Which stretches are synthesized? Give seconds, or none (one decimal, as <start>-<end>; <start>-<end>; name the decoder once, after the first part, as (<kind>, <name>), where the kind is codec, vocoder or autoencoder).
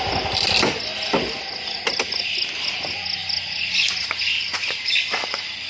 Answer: none